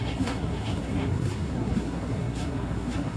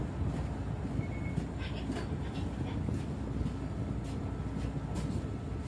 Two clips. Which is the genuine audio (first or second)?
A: second